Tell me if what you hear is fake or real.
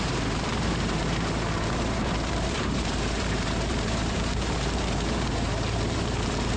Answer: fake